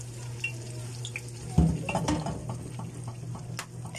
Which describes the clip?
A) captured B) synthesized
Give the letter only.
A